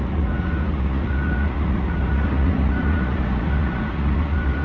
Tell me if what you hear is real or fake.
fake